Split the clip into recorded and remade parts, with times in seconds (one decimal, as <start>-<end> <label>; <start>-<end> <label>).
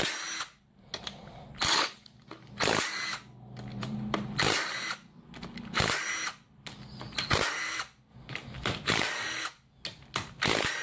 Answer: 0.0-3.7 recorded; 3.7-4.3 remade; 4.3-10.8 recorded